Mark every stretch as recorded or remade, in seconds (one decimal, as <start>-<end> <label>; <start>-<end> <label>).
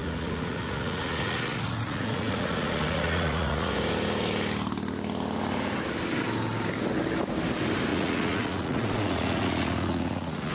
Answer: 0.0-3.7 remade; 3.7-7.9 recorded; 7.9-10.5 remade